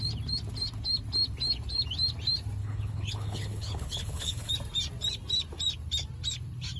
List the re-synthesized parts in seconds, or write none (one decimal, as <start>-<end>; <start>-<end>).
2.6-4.5